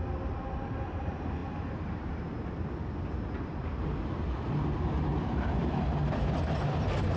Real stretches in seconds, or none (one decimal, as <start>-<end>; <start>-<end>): 0.0-7.2

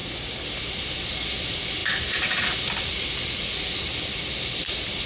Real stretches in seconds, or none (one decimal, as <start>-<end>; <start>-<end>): 0.0-5.1

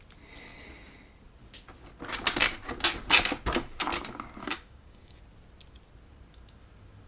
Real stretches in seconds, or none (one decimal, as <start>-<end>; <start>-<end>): 0.0-4.4; 5.2-7.1

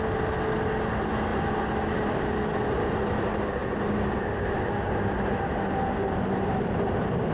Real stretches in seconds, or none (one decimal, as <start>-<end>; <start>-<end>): 0.0-7.3

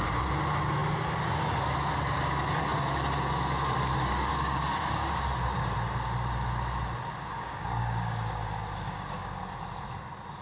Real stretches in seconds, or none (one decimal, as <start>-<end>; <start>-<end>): 0.0-4.0; 5.2-7.3; 9.4-10.4